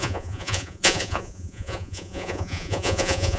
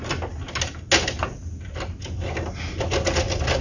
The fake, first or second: first